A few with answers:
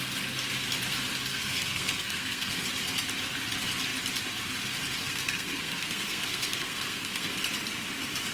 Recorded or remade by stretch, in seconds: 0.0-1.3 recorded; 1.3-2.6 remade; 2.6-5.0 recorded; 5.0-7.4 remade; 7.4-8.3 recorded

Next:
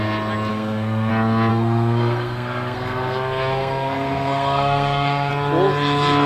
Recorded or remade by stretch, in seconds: 0.0-0.5 recorded; 0.5-1.1 remade; 1.1-1.5 recorded; 1.5-5.3 remade; 5.3-6.3 recorded

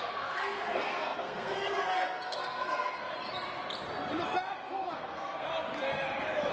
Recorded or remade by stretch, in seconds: 0.0-3.0 remade; 3.0-4.7 recorded; 4.7-5.5 remade; 5.5-6.5 recorded